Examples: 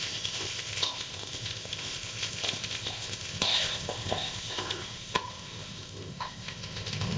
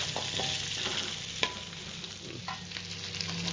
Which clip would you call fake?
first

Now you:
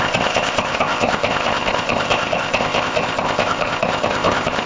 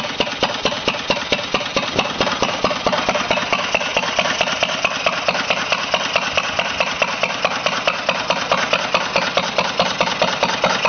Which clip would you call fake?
first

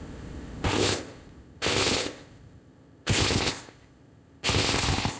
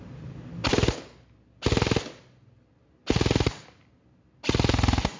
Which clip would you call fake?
first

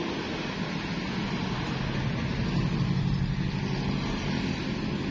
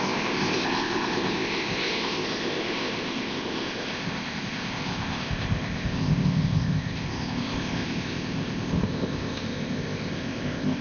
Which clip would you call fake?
second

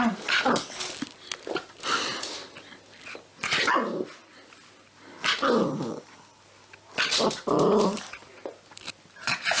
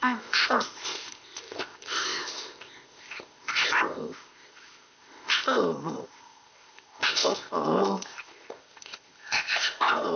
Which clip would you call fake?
second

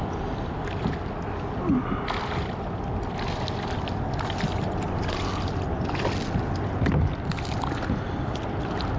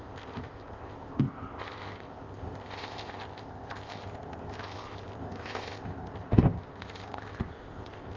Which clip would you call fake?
second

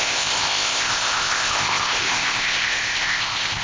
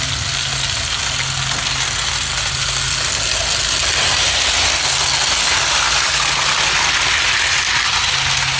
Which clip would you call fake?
first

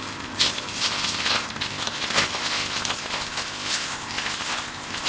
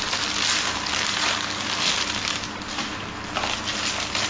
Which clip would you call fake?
first